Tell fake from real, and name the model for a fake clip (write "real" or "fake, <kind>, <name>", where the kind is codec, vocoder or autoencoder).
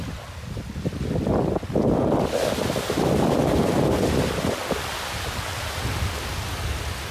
real